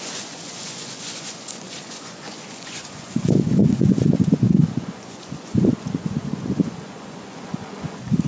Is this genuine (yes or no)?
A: no